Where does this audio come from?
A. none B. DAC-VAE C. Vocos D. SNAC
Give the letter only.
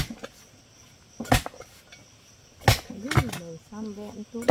A